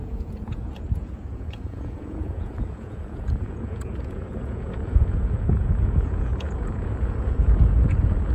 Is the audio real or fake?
fake